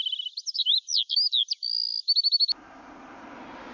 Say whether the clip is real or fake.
real